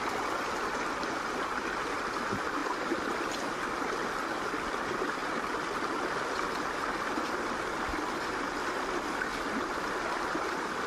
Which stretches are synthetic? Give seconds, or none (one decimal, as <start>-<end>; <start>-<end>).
none